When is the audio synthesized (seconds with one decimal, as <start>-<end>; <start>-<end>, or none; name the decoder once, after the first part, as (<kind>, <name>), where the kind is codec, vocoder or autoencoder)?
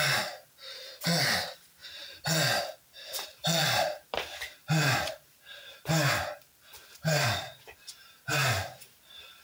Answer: 1.8-2.6 (vocoder, BigVGAN v2); 3.4-5.1